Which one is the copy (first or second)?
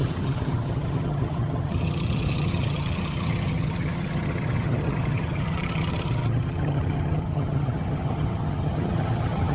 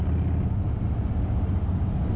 first